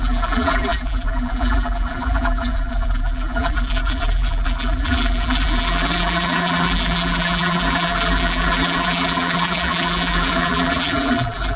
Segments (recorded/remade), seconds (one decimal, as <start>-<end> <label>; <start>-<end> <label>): 0.0-11.6 remade